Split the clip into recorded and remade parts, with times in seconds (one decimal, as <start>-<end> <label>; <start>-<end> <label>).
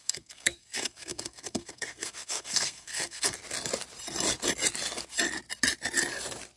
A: 0.0-3.4 remade; 3.4-6.6 recorded